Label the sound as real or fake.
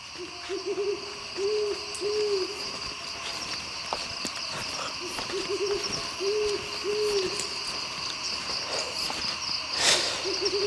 real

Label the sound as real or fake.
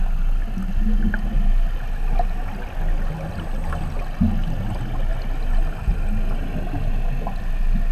real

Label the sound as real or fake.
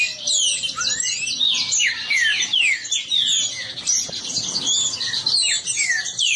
real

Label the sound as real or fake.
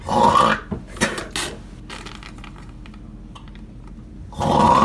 real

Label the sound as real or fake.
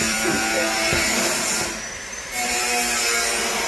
fake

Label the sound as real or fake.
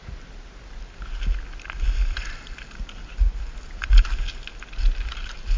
real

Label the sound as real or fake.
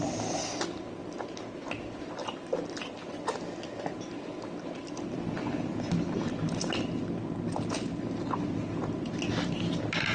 real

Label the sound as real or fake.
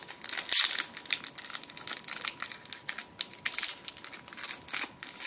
real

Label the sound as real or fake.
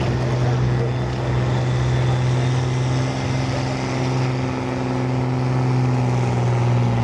real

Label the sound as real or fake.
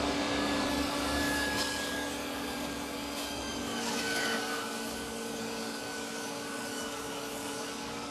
fake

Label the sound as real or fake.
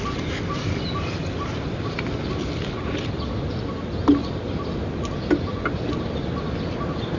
real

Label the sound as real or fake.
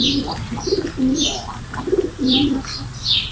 real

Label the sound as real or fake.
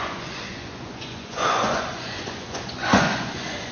fake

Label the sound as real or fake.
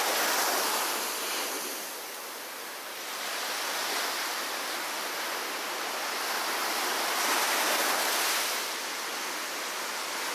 real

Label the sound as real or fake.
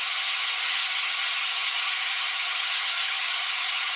fake